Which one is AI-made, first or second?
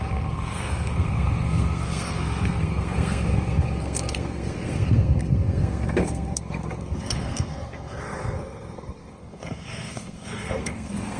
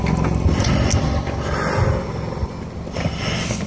first